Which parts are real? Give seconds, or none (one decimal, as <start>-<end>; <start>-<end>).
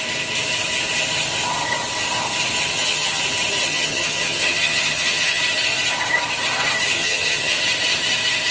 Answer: 0.0-2.7; 3.2-3.6; 5.4-7.0; 7.6-8.5